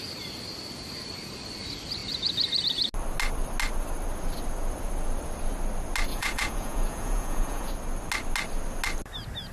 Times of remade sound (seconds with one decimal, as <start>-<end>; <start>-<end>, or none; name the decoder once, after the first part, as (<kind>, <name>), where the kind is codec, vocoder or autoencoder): 6.1-7.7 (vocoder, Vocos)